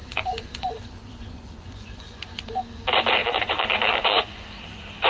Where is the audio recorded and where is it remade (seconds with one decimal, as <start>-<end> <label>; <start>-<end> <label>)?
0.0-2.6 remade; 2.6-3.2 recorded; 3.2-4.6 remade; 4.6-5.1 recorded